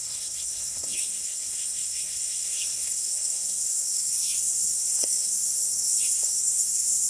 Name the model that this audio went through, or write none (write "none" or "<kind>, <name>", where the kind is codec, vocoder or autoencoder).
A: codec, SNAC